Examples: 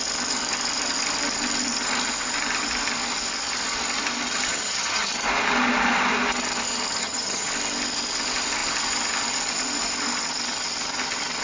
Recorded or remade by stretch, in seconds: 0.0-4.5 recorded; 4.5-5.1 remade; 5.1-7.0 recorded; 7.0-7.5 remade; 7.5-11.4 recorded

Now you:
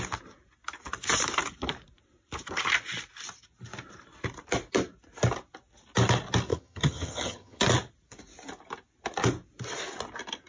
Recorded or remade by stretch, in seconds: 0.0-6.5 recorded; 6.5-7.6 remade; 7.6-10.5 recorded

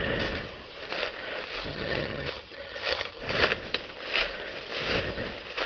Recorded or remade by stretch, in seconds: 0.0-1.7 recorded; 1.7-3.2 remade; 3.2-5.7 recorded

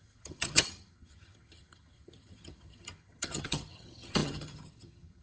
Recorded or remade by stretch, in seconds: 0.0-5.2 remade

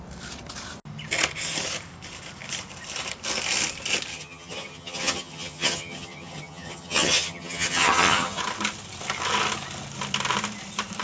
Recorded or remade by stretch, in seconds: 0.0-4.1 recorded; 4.1-8.4 remade; 8.4-11.0 recorded

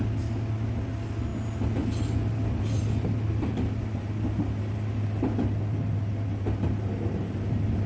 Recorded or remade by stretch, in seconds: 0.0-7.9 recorded

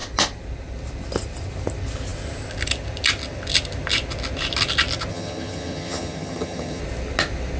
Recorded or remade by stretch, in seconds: 0.0-5.1 recorded; 5.1-6.8 remade; 6.8-7.6 recorded

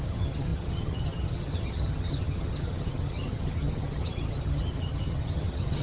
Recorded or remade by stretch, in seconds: 0.0-5.8 remade